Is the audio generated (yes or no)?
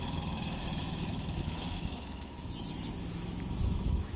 yes